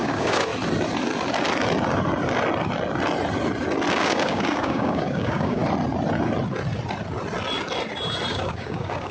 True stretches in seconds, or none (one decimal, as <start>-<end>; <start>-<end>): 0.5-3.9; 5.6-8.3

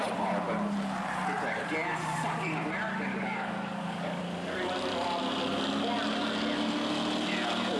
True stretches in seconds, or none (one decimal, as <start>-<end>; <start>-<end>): 0.0-3.1; 4.2-7.8

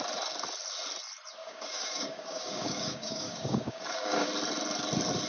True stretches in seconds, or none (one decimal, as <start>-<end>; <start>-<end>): 0.0-1.4; 4.3-5.3

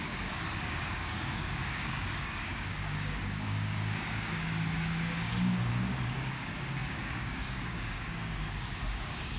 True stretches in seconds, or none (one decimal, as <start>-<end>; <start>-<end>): none

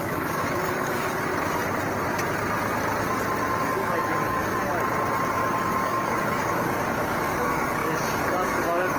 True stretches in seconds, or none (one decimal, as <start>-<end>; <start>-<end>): 1.3-3.6; 4.7-5.3

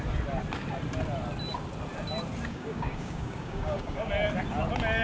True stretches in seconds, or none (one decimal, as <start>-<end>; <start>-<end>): 0.0-2.5; 4.1-5.0

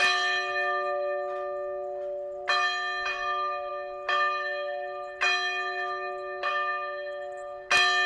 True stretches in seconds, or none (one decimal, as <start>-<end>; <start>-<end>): 0.0-8.1